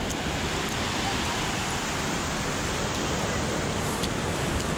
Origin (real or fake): real